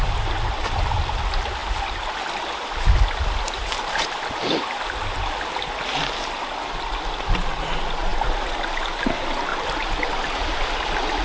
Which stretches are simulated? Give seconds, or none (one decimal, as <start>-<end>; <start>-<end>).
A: 9.5-10.1